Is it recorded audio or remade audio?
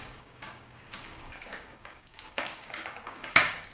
remade